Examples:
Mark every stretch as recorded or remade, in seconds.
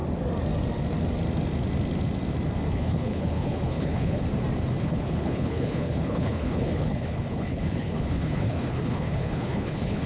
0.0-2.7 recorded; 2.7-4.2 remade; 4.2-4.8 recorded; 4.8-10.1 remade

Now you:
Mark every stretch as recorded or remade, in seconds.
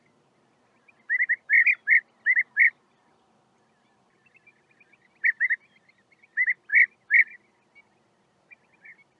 0.0-1.6 recorded; 1.6-2.8 remade; 2.8-9.2 recorded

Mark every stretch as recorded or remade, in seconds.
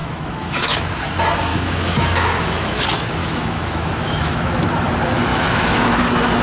0.0-0.9 remade; 0.9-1.5 recorded; 1.5-2.8 remade; 2.8-3.2 recorded; 3.2-4.5 remade; 4.5-5.3 recorded; 5.3-6.0 remade; 6.0-6.4 recorded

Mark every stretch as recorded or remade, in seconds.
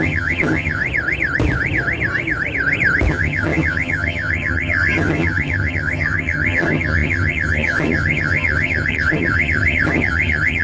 0.0-0.8 remade; 0.8-3.1 recorded; 3.1-10.6 remade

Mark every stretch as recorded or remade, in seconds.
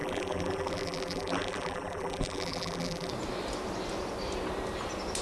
0.0-3.1 remade; 3.1-5.2 recorded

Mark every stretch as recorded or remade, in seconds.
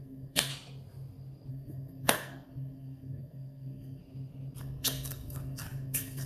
0.0-0.5 remade; 0.5-1.5 recorded; 1.5-4.0 remade; 4.0-4.6 recorded; 4.6-6.3 remade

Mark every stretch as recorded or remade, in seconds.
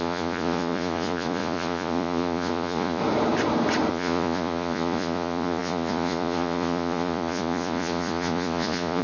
0.0-3.0 remade; 3.0-3.9 recorded; 3.9-9.0 remade